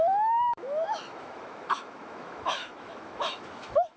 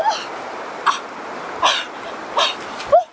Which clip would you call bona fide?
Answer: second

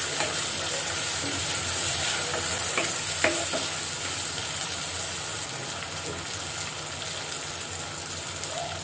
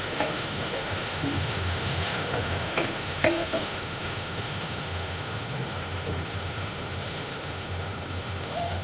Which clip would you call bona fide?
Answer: first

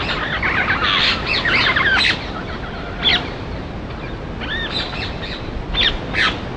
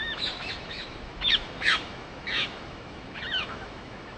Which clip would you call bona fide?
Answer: first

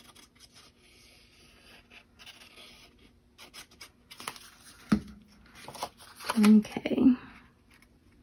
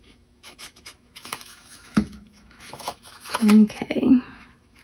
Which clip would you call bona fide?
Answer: first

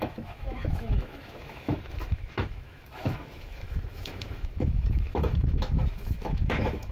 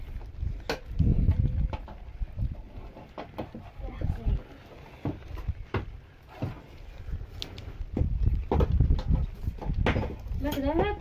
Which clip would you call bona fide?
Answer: second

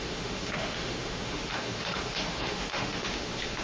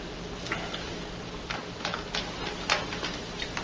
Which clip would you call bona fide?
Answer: second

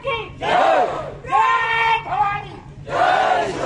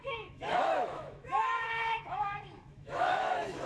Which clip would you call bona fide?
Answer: first